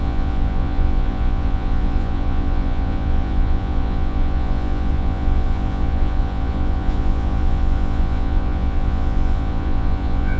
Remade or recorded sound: remade